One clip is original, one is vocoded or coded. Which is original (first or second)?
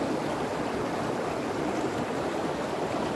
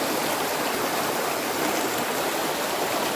second